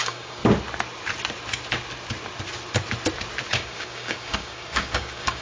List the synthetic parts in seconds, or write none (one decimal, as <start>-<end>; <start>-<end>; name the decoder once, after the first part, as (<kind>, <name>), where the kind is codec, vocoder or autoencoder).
0.0-0.4 (codec, DAC); 3.5-5.4